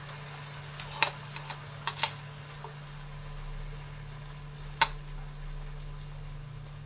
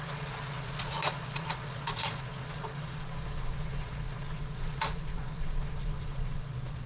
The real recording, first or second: first